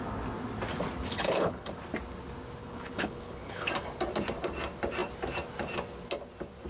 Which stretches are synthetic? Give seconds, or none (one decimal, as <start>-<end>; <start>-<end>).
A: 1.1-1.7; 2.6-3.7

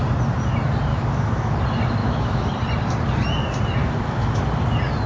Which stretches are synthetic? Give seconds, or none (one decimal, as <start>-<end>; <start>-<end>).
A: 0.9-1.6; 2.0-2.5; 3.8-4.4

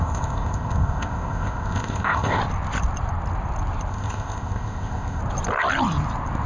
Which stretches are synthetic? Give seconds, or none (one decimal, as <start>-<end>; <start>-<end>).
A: 0.0-2.4; 3.9-5.2

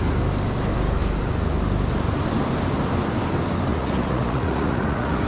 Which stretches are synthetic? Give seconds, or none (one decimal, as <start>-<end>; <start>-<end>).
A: 3.7-5.3

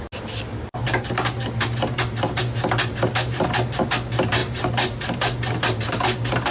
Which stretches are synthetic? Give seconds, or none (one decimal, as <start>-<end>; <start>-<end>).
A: none

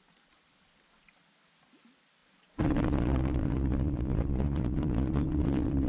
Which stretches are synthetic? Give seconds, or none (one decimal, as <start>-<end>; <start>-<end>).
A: 2.2-5.9

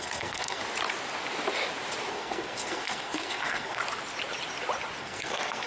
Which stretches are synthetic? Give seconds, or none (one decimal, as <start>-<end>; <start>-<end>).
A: 0.0-0.6; 2.1-3.8; 5.0-5.7

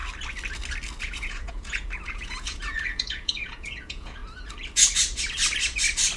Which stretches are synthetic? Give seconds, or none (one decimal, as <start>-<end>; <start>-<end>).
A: 1.0-4.2